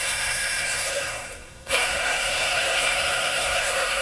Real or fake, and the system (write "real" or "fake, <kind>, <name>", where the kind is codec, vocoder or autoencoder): fake, codec, SNAC